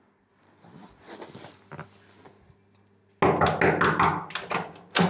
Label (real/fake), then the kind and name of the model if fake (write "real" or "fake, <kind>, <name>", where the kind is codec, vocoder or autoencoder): real